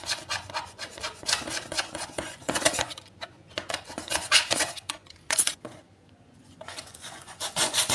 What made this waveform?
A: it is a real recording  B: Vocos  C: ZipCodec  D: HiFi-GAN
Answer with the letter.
B